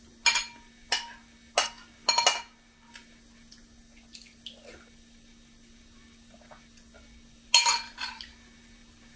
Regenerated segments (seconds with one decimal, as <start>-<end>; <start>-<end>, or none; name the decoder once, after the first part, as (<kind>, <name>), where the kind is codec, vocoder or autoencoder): none